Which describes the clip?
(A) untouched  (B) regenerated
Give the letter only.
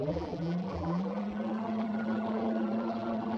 B